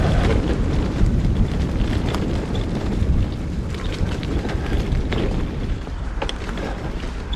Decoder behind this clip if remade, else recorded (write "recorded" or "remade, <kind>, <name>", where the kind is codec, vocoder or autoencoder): remade, vocoder, BigVGAN v2